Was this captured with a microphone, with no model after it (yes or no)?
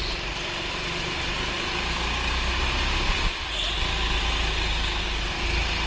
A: yes